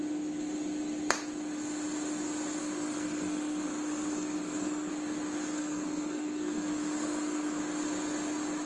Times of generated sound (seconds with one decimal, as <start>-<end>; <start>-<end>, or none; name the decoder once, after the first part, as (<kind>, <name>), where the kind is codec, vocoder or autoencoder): 2.6-4.9 (codec, SNAC); 5.5-7.6